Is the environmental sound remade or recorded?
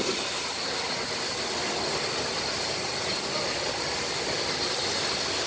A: recorded